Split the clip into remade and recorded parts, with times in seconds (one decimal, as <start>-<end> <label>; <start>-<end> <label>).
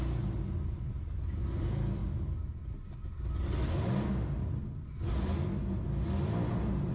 0.0-6.9 recorded